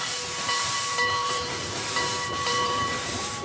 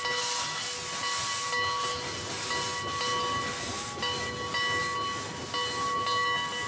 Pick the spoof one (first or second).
first